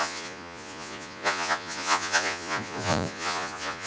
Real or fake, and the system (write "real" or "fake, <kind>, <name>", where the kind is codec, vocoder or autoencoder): fake, vocoder, Vocos